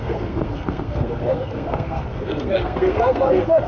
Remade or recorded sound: remade